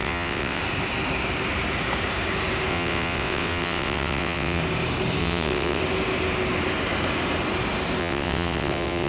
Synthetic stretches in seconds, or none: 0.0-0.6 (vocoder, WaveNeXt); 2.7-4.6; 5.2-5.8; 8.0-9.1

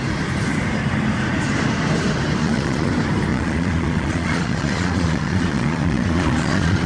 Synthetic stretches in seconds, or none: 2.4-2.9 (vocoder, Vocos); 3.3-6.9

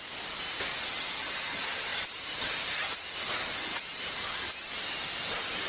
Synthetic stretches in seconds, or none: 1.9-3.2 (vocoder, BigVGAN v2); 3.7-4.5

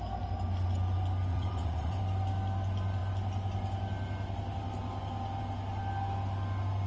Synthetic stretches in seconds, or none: 1.3-2.0 (vocoder, WaveNeXt)

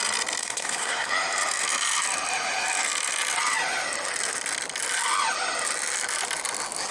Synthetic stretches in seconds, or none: 0.4-1.1 (codec, SNAC)